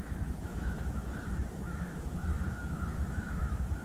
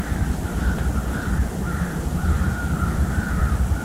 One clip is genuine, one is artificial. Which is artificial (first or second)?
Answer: first